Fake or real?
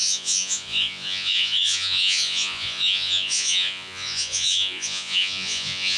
fake